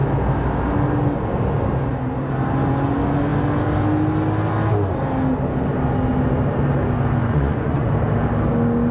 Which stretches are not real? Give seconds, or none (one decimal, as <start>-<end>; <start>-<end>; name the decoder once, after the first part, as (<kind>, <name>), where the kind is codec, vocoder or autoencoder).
7.2-7.9 (vocoder, Vocos)